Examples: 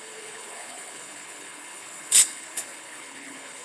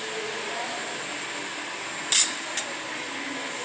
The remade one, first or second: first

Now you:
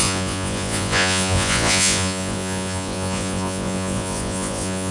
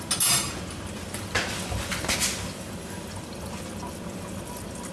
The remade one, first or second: first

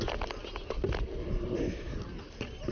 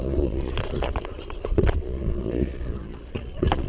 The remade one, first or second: second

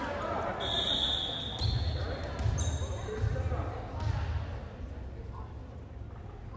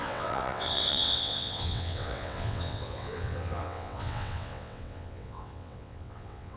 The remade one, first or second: second